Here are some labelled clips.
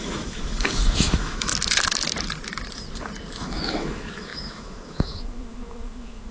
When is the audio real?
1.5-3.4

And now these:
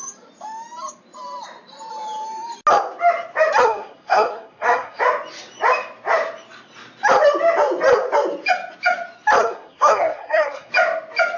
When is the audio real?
0.0-3.6; 5.0-9.4; 10.7-11.4